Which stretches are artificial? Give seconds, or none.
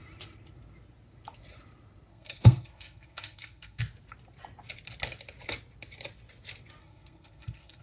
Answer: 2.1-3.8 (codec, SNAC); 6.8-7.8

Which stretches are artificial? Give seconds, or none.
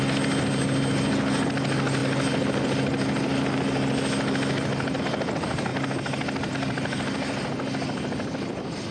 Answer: none